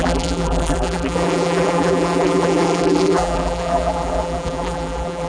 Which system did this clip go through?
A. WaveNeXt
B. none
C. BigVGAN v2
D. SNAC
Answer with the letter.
C